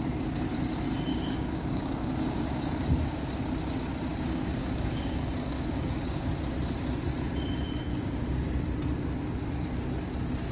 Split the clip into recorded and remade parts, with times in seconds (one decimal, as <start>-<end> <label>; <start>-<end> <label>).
0.0-1.1 recorded; 1.1-3.2 remade; 3.2-4.1 recorded; 4.1-6.3 remade; 6.3-7.9 recorded; 7.9-8.5 remade; 8.5-10.5 recorded